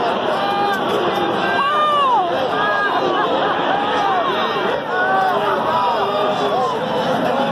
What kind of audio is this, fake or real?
real